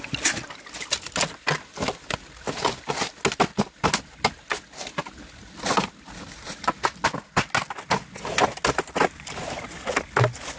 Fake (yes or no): no